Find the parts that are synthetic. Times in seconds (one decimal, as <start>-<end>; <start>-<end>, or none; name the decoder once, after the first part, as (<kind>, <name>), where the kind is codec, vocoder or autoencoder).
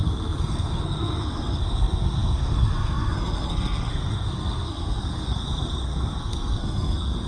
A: 0.0-7.3 (codec, SNAC)